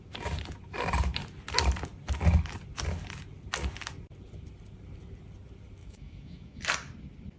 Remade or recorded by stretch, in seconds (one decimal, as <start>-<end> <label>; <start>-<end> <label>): 0.0-5.8 recorded; 5.8-6.6 remade; 6.6-7.4 recorded